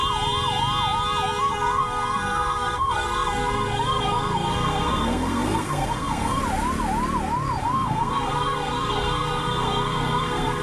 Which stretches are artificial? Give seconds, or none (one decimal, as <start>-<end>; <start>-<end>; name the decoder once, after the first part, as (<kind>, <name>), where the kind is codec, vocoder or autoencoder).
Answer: 1.4-6.4 (codec, SNAC); 7.6-10.6